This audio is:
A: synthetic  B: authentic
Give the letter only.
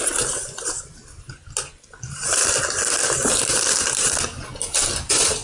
B